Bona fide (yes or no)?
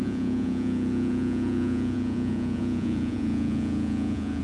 no